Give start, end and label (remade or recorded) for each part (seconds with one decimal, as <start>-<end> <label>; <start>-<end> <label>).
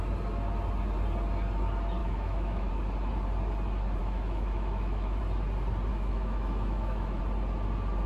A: 0.0-2.0 recorded; 2.0-2.7 remade; 2.7-4.0 recorded; 4.0-5.2 remade; 5.2-5.9 recorded; 5.9-7.2 remade; 7.2-8.1 recorded